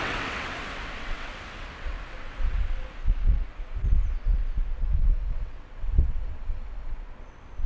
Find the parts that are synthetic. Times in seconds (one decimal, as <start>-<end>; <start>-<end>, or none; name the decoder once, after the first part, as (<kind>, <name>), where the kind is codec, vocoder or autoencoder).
0.0-3.0 (vocoder, WaveNeXt); 5.3-7.7